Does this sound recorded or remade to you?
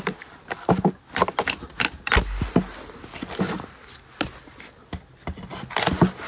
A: recorded